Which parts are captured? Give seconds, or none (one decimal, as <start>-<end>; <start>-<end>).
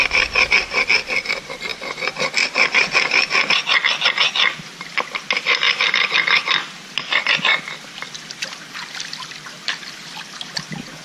0.0-11.0